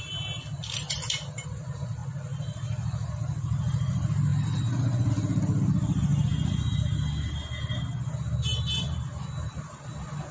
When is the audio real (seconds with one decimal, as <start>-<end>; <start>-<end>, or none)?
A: 0.0-10.3